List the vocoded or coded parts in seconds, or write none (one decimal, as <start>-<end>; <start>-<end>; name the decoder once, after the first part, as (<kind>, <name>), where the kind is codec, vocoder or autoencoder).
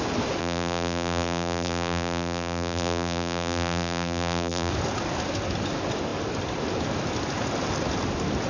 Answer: 0.4-4.7 (vocoder, BigVGAN v2)